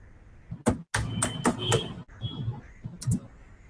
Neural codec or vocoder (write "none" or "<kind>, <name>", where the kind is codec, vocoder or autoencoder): none